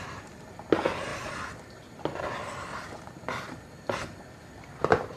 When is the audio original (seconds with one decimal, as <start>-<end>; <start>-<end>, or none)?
0.0-1.1; 4.2-5.2